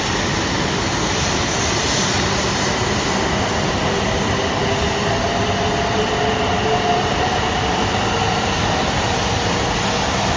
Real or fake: real